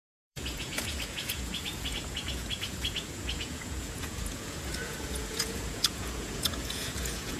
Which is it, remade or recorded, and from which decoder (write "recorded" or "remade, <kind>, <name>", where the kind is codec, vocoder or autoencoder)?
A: remade, vocoder, Vocos